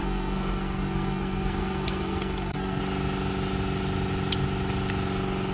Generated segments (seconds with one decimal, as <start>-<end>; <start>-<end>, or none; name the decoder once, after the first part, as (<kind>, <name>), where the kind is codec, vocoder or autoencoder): 0.0-2.8 (codec, SNAC)